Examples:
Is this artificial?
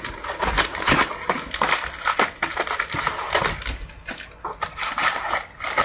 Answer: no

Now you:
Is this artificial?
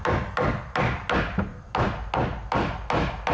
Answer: no